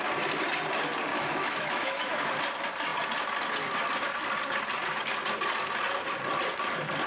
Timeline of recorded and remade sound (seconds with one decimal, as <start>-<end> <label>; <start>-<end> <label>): 0.0-1.1 recorded; 1.1-2.3 remade; 2.3-7.1 recorded